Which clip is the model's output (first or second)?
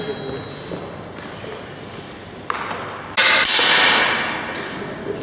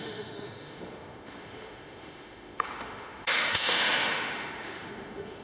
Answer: second